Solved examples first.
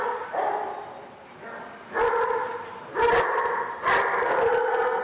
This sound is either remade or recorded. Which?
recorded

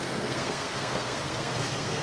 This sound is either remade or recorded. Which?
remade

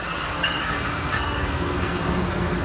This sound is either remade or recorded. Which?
remade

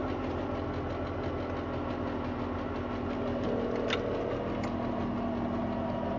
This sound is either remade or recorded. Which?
recorded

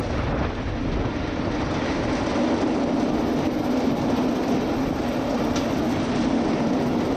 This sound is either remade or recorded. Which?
recorded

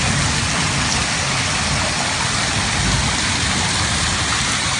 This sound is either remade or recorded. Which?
recorded